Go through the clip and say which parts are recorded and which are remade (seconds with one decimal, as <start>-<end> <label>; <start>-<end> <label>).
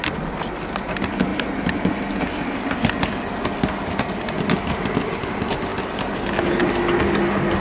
0.0-7.6 recorded